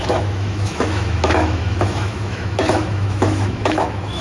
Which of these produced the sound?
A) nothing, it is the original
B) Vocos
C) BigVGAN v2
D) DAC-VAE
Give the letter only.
D